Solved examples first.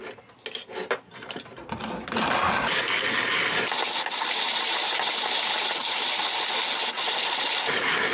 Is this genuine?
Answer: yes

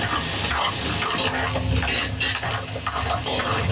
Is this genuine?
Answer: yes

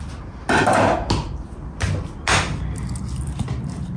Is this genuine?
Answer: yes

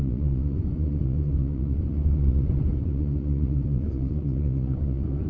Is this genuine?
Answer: no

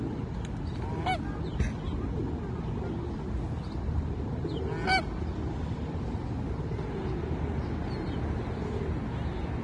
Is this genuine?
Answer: yes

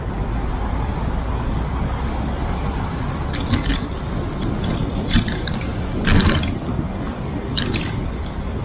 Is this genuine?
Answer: yes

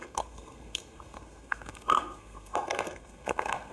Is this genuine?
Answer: no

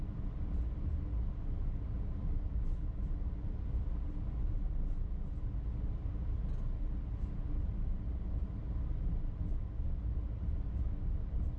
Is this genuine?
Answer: yes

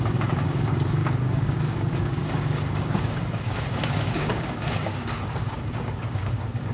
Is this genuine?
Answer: no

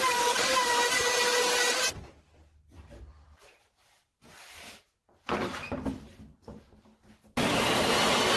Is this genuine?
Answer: yes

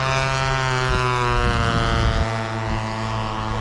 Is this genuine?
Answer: yes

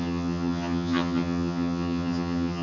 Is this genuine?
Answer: no